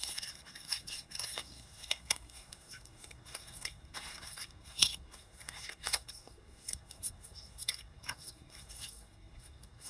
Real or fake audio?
fake